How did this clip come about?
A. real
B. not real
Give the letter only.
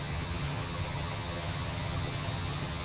B